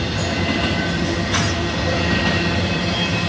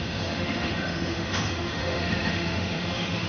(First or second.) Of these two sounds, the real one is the first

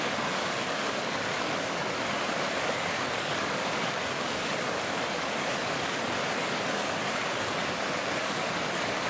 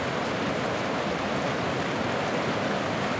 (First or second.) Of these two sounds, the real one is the second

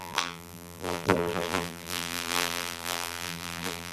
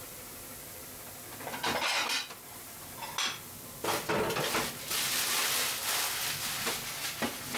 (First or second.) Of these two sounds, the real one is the second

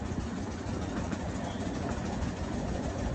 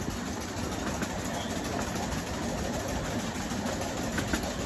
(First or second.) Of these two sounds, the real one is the second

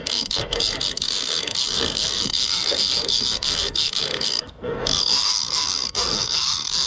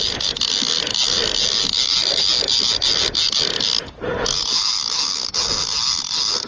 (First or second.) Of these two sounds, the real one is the second